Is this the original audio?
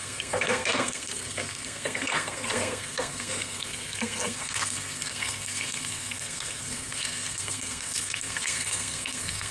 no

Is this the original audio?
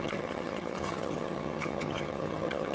no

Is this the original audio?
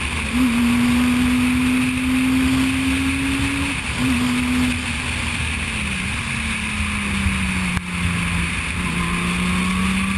yes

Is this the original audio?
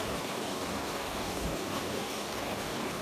no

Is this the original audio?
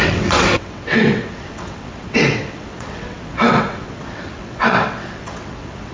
no